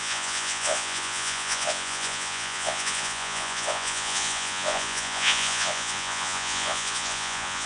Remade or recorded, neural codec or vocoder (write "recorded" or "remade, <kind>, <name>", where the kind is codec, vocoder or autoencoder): remade, vocoder, Vocos